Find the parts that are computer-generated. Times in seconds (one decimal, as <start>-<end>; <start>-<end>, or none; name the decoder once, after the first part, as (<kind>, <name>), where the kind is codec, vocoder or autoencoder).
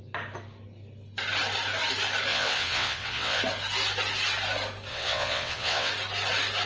2.3-3.4 (vocoder, WaveNeXt); 4.9-5.9